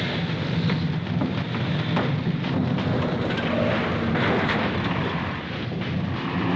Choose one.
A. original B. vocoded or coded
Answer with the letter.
A